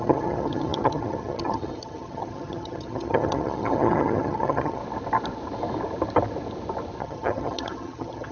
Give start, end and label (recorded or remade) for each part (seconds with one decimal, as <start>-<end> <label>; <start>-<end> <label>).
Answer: 0.0-4.8 remade; 4.8-7.0 recorded; 7.0-8.3 remade